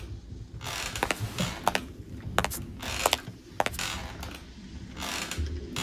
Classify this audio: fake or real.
real